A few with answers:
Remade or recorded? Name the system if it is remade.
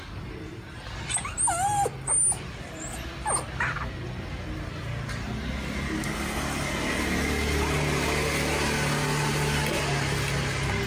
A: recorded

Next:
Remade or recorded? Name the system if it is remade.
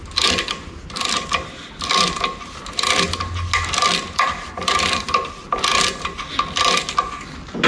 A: recorded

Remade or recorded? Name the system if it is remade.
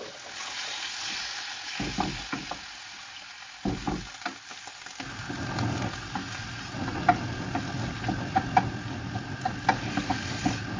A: recorded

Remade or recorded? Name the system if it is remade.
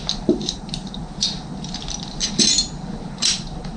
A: recorded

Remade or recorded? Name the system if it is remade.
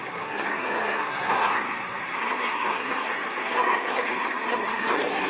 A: remade, codec, SNAC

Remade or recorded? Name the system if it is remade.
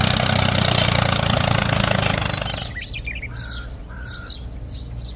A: recorded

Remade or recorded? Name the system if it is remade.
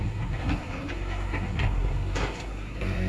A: remade, codec, SNAC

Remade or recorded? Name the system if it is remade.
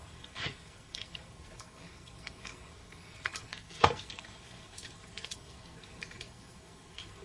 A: remade, codec, SNAC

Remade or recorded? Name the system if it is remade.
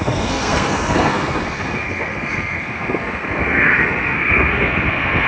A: remade, codec, SNAC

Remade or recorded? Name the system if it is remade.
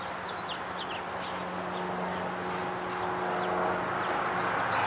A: recorded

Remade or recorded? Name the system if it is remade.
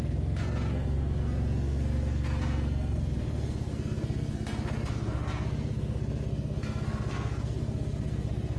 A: remade, codec, SNAC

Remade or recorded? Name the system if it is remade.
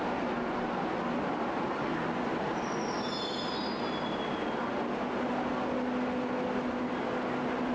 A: recorded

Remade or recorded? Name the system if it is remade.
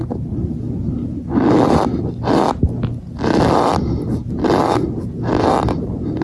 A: recorded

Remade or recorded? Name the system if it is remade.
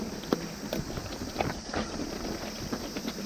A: recorded